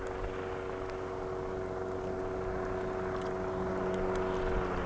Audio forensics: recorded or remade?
recorded